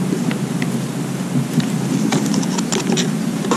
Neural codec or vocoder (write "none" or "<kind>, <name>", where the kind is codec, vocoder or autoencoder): none